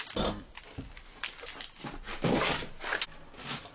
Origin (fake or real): real